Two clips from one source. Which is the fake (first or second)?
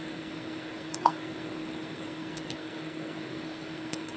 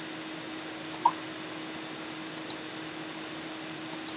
first